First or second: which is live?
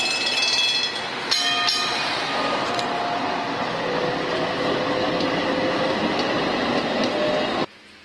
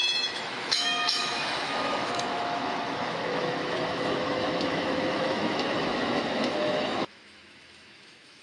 first